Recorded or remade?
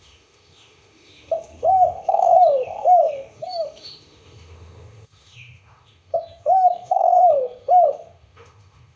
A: remade